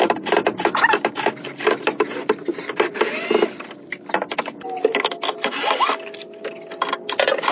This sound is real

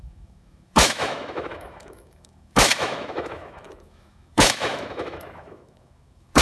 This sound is fake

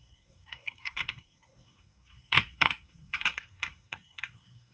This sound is fake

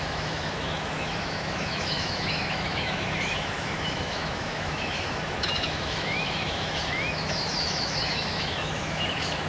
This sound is fake